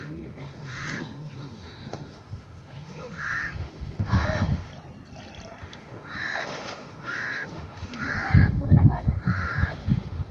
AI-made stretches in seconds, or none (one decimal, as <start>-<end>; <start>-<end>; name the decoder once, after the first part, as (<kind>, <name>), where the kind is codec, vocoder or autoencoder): 0.0-4.7 (autoencoder, DAC-VAE); 5.6-10.3